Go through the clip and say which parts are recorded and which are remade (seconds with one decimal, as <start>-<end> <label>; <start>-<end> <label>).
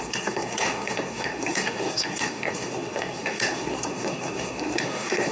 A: 0.0-5.3 remade